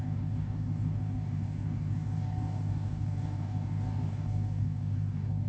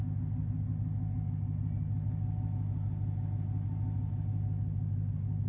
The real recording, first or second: second